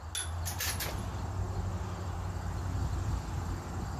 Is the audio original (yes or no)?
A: yes